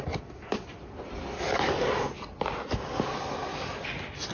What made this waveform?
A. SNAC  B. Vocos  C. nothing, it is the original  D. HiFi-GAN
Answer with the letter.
C